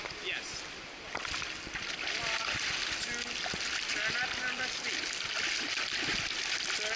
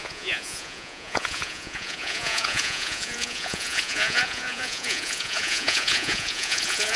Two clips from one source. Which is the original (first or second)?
first